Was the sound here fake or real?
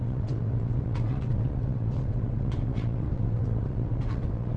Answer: fake